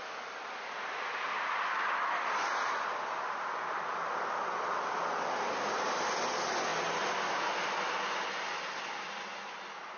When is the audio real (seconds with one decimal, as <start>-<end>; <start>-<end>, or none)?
0.0-10.0